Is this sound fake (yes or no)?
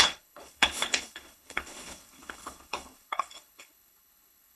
yes